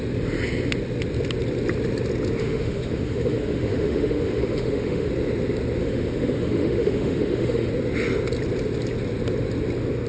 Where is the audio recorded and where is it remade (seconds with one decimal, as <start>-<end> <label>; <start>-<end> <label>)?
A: 0.0-2.4 recorded; 2.4-5.1 remade; 5.1-5.8 recorded; 5.8-7.7 remade; 7.7-10.1 recorded